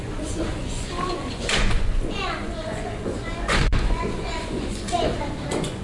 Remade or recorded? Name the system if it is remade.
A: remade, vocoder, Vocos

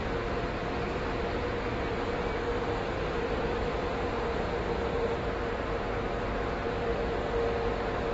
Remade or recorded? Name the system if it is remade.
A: recorded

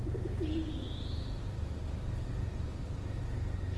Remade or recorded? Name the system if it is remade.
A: recorded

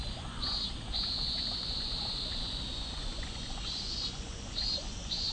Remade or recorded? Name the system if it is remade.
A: remade, vocoder, Vocos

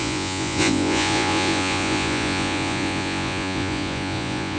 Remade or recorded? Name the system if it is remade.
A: remade, vocoder, Vocos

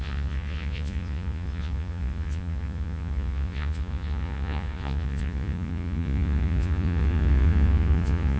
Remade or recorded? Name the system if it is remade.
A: remade, vocoder, Vocos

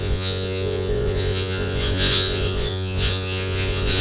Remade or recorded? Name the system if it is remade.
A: remade, vocoder, Vocos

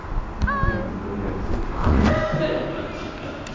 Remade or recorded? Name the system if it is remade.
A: recorded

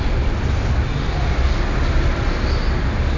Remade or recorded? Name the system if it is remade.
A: recorded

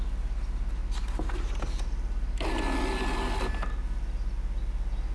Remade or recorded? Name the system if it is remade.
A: recorded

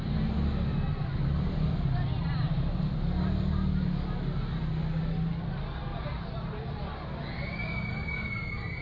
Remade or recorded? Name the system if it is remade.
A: recorded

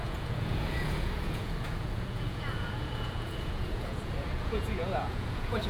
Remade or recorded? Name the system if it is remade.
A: remade, vocoder, Vocos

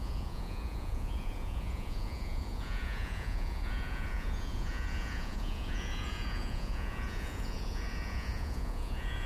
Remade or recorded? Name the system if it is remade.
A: remade, vocoder, Vocos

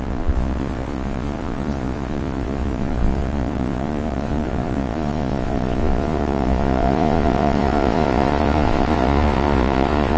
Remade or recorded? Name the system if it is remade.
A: remade, vocoder, Vocos